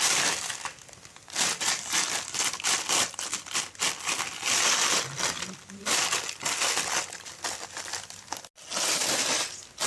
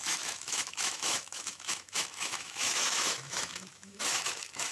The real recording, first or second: first